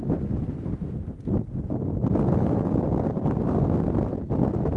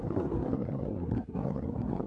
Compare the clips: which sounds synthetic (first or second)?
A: second